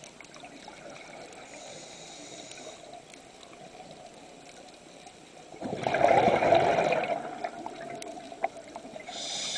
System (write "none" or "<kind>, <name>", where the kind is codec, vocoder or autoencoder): none